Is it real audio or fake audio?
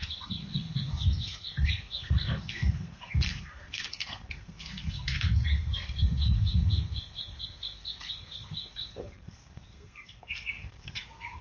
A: fake